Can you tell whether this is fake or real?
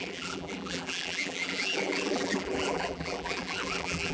fake